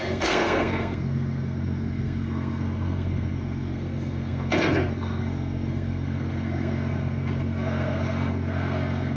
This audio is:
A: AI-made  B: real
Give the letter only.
A